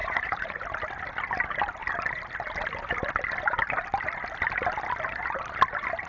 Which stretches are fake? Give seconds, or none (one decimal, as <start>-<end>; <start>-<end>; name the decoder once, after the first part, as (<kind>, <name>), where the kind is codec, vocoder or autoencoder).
0.0-0.6 (vocoder, Vocos)